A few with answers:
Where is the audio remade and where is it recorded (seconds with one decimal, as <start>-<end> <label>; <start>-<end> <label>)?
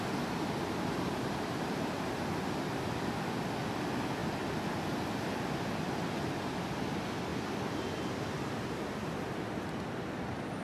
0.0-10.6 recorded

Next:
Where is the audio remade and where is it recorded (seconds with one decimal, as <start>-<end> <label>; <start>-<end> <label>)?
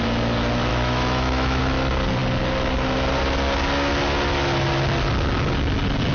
0.0-0.7 recorded; 0.7-1.6 remade; 1.6-6.1 recorded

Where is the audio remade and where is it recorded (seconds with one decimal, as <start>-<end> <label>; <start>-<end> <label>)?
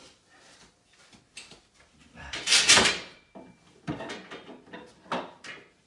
0.0-2.0 recorded; 2.0-4.0 remade; 4.0-5.9 recorded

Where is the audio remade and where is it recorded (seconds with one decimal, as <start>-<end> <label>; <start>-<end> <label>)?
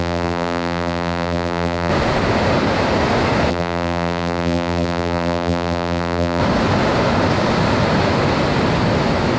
0.0-1.9 remade; 1.9-3.5 recorded; 3.5-6.4 remade; 6.4-9.4 recorded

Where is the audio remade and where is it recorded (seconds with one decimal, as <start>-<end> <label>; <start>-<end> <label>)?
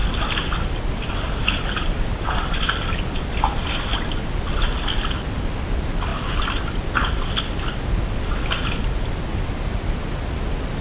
0.0-10.8 recorded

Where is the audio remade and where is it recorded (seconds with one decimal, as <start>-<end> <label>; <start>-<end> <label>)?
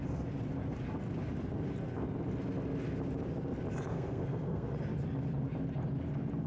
0.0-3.9 recorded; 3.9-4.7 remade; 4.7-6.5 recorded